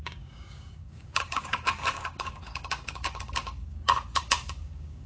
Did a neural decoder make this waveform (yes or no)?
yes